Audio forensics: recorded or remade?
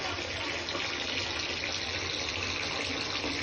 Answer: recorded